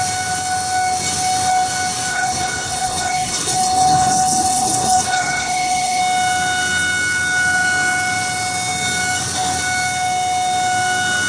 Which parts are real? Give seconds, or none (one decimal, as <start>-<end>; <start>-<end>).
0.0-2.1; 6.0-11.3